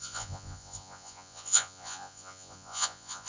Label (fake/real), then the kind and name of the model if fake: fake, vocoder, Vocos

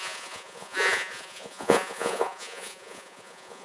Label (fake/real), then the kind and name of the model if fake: fake, vocoder, Vocos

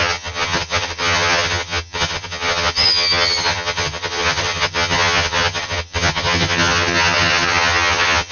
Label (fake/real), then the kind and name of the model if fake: fake, vocoder, HiFi-GAN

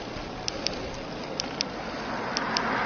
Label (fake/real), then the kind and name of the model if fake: real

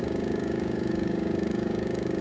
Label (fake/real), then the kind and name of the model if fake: fake, codec, DAC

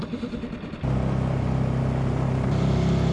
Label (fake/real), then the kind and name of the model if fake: real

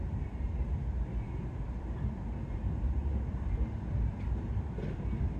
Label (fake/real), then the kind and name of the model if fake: fake, vocoder, BigVGAN v2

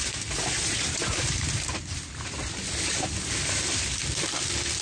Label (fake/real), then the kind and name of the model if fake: real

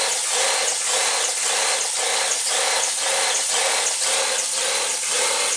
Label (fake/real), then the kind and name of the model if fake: real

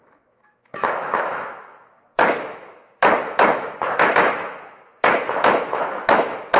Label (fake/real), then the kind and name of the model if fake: fake, autoencoder, DAC-VAE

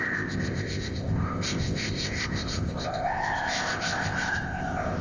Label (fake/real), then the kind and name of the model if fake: fake, codec, ZipCodec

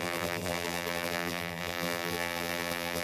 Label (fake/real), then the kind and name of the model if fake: fake, vocoder, BigVGAN v2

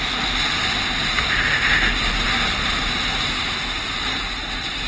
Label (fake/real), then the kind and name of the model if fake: real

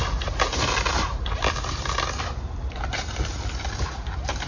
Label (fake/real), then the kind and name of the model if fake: real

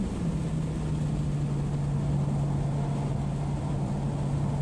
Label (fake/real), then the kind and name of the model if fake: real